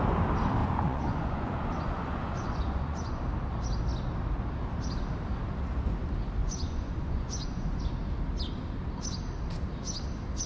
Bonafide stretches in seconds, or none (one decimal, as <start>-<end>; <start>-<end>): 0.0-0.6; 3.2-6.4; 7.8-10.5